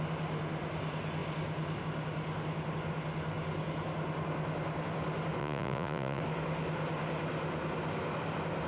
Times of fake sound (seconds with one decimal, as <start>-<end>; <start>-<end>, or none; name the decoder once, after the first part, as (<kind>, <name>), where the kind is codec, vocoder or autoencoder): 5.4-6.2 (vocoder, Vocos)